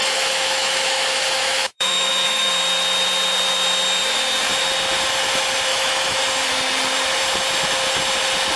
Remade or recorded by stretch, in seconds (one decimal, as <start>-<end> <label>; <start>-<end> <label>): 0.0-2.5 remade; 2.5-5.7 recorded; 5.7-6.2 remade; 6.2-8.6 recorded